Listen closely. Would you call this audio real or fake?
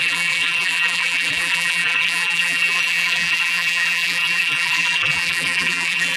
fake